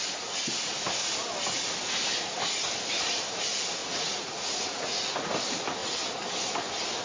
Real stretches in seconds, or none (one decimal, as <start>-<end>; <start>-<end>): 0.0-3.8; 5.3-7.0